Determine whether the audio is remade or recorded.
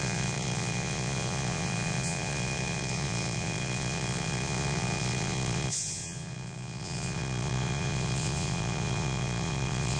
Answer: remade